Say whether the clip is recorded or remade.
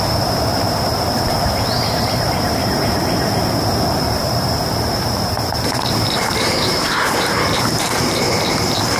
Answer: remade